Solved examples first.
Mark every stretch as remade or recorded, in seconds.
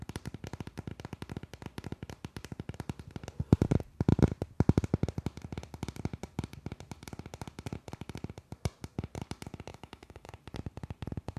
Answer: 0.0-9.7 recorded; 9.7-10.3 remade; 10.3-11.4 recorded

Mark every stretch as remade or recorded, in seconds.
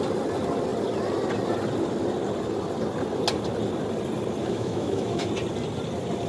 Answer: 0.0-4.4 recorded; 4.4-5.3 remade; 5.3-6.3 recorded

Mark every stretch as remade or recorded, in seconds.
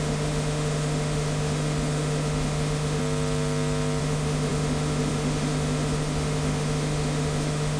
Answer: 0.0-3.0 remade; 3.0-4.0 recorded; 4.0-7.8 remade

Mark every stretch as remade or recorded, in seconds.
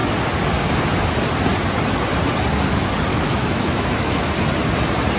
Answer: 0.0-3.1 recorded; 3.1-4.3 remade; 4.3-5.2 recorded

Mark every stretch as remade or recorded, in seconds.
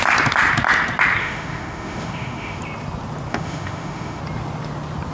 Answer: 0.0-1.2 recorded; 1.2-2.6 remade; 2.6-3.3 recorded; 3.3-4.2 remade; 4.2-5.1 recorded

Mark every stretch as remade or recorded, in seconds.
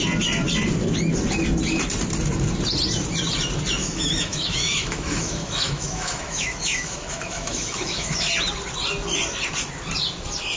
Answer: 0.0-3.8 recorded; 3.8-8.3 remade; 8.3-10.6 recorded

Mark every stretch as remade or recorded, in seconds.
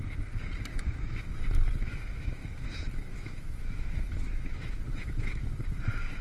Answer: 0.0-0.7 recorded; 0.7-1.3 remade; 1.3-1.8 recorded; 1.8-5.5 remade; 5.5-6.2 recorded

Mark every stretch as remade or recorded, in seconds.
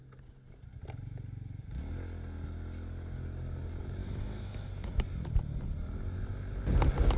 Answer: 0.0-4.0 recorded; 4.0-4.7 remade; 4.7-7.2 recorded